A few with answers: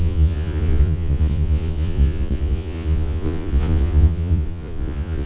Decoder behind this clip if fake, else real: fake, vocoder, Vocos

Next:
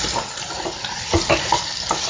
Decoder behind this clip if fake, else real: real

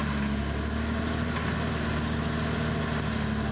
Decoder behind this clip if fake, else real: real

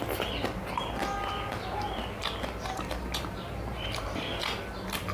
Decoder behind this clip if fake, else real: real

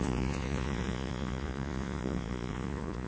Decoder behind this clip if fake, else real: fake, vocoder, Vocos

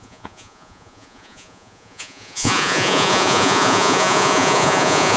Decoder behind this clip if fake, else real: fake, vocoder, Vocos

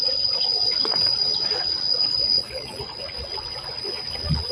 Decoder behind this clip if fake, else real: fake, vocoder, Vocos